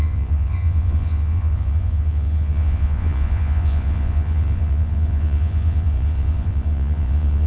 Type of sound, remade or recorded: remade